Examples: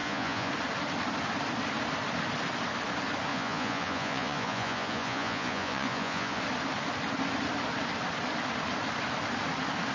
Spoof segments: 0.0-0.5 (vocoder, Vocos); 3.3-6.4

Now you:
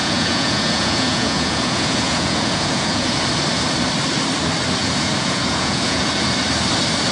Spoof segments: 0.0-3.2 (vocoder, Vocos); 4.8-6.0

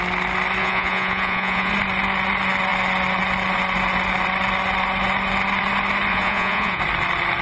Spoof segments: 0.6-1.7 (vocoder, Vocos); 6.1-6.8